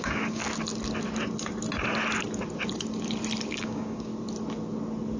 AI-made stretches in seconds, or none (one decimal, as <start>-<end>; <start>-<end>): 0.0-0.4; 3.5-4.1